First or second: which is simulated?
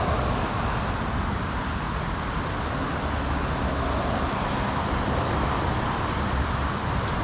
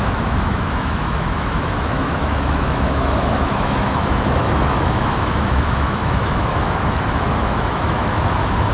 second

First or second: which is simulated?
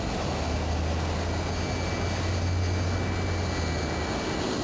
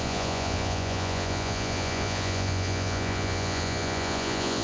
second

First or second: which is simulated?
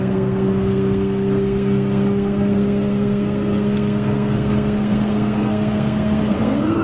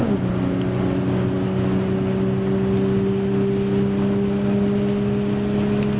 first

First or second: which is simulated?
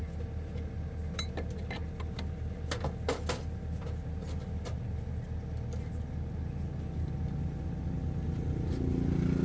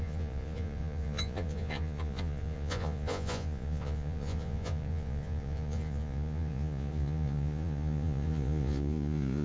second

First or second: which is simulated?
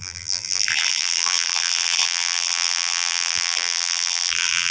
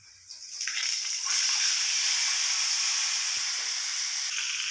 first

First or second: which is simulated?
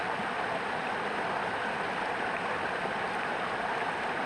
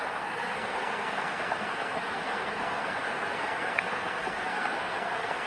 second